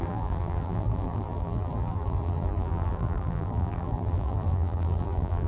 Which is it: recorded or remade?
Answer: remade